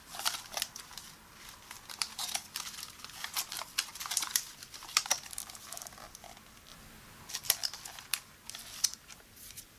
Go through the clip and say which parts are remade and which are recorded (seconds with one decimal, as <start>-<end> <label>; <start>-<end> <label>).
0.0-6.7 remade; 6.7-7.3 recorded; 7.3-9.8 remade